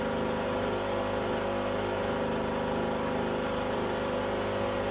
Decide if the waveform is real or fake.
real